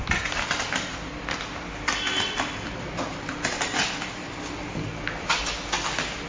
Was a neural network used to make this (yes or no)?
no